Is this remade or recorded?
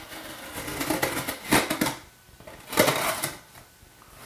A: recorded